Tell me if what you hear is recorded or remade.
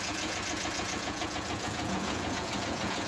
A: remade